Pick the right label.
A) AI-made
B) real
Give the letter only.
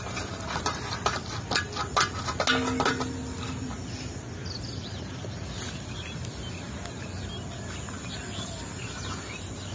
B